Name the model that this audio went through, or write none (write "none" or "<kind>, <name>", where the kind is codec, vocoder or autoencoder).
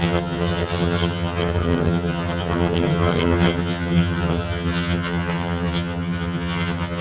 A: vocoder, HiFi-GAN